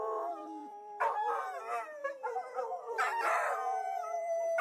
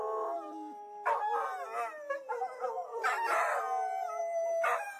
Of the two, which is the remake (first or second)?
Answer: first